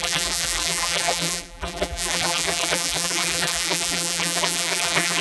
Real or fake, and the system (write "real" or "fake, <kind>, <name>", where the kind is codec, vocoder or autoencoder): fake, vocoder, BigVGAN v2